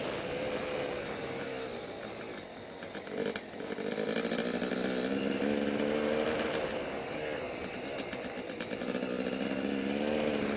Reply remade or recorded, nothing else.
recorded